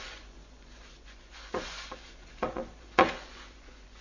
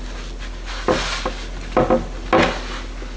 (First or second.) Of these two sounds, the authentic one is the second